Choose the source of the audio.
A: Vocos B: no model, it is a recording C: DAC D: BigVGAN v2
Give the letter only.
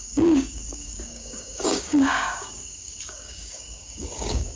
C